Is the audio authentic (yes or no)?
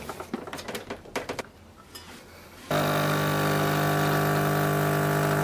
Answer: yes